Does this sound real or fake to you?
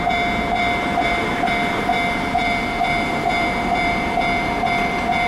fake